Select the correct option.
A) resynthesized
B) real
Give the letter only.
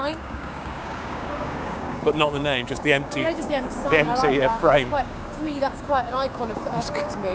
A